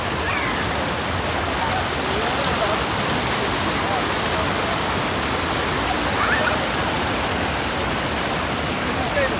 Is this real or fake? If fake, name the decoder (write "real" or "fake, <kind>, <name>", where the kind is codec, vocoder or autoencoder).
real